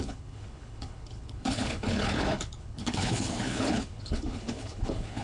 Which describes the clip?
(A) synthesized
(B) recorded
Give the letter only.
A